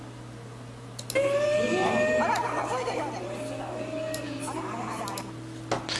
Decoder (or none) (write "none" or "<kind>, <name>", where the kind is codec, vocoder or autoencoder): none